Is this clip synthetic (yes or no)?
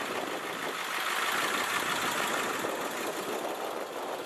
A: no